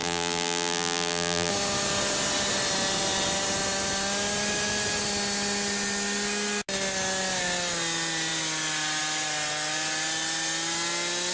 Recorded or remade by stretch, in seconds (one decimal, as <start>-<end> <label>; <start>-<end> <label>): 0.0-1.5 remade; 1.5-11.3 recorded